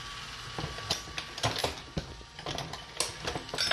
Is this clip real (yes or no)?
yes